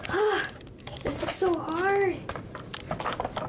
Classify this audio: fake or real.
real